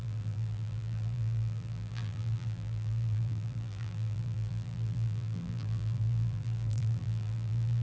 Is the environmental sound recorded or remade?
remade